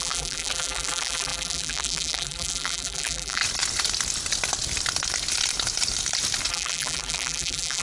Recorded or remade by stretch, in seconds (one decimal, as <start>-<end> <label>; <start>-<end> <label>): 0.0-3.4 remade; 3.4-6.5 recorded; 6.5-7.8 remade